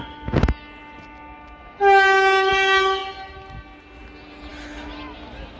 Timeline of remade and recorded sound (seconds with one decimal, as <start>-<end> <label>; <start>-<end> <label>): 0.0-5.6 recorded